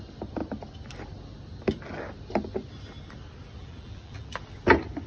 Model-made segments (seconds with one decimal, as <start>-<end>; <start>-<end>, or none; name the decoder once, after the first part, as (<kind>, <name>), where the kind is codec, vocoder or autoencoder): 3.6-4.4 (vocoder, BigVGAN v2)